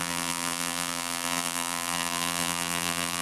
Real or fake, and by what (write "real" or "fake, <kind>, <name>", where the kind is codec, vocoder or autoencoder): fake, vocoder, BigVGAN v2